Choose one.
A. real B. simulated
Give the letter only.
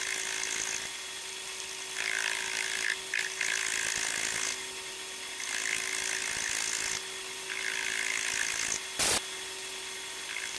A